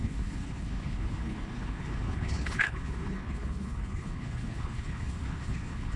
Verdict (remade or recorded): remade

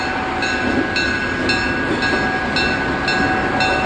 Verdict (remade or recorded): recorded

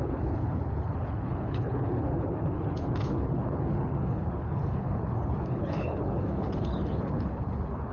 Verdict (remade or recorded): remade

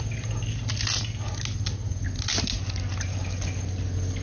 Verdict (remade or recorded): recorded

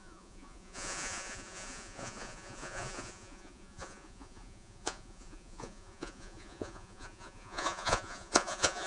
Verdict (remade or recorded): remade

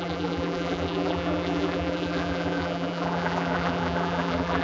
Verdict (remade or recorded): remade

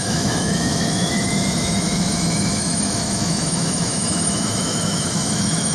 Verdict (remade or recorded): remade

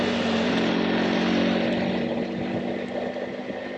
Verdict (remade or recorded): recorded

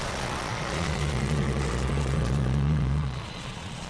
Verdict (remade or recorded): remade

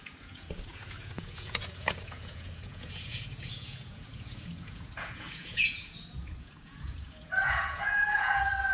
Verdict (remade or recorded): remade